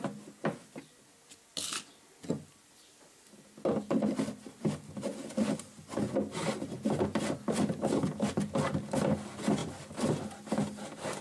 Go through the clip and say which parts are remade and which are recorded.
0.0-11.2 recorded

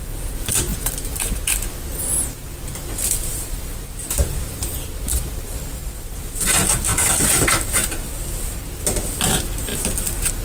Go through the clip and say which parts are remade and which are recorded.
0.0-3.3 recorded; 3.3-6.4 remade; 6.4-10.4 recorded

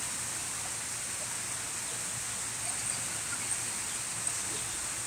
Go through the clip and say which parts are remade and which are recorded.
0.0-5.1 recorded

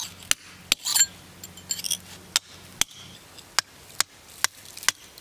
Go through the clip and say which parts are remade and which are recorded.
0.0-5.2 recorded